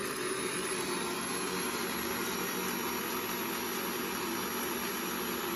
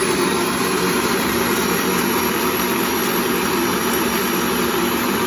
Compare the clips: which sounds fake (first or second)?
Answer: second